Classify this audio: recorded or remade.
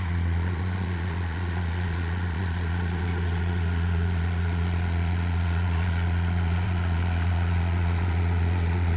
remade